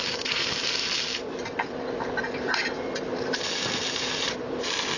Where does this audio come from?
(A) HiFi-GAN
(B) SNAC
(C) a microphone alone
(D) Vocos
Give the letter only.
C